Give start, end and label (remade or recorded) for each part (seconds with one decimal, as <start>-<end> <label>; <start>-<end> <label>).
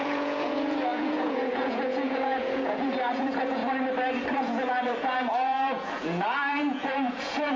0.0-3.6 remade; 3.6-4.4 recorded; 4.4-7.6 remade